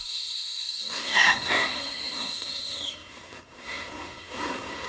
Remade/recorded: remade